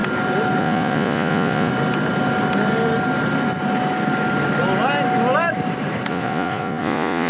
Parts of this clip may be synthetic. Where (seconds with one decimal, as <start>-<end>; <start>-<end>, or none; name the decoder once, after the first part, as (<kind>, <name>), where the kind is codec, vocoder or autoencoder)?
0.6-1.7 (vocoder, Vocos); 6.1-7.3